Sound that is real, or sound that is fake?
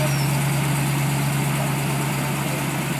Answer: real